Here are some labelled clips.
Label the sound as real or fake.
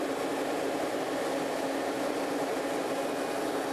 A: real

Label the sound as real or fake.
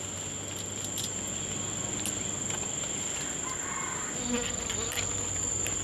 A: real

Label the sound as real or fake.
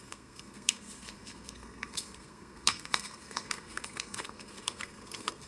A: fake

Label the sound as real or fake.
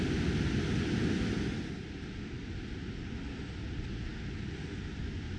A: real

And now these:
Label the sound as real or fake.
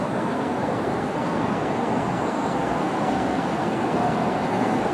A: fake